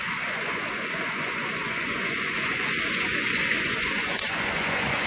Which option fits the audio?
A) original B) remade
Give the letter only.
B